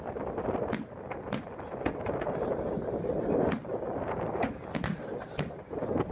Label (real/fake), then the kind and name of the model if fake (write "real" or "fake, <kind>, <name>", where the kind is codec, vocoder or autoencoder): real